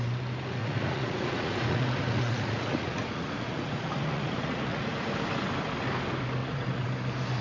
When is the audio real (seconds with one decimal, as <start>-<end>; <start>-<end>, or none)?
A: 0.0-0.6; 4.9-6.4; 6.9-7.4